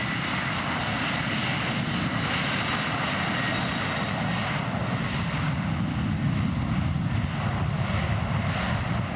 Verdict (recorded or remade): recorded